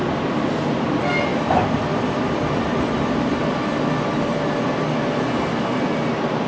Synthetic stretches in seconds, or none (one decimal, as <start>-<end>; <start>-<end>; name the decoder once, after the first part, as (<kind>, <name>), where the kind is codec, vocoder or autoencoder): none